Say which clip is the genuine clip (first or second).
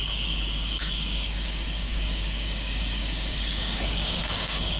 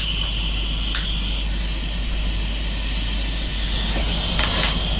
second